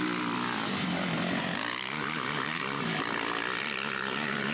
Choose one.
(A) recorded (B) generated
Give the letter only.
A